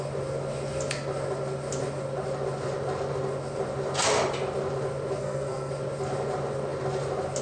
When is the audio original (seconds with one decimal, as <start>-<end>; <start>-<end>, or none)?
0.0-5.2; 5.7-7.4